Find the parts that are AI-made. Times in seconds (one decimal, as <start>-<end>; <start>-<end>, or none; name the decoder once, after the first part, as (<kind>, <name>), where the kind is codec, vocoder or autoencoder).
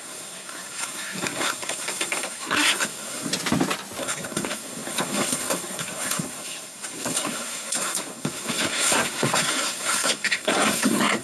0.0-3.3 (codec, SNAC); 4.0-11.2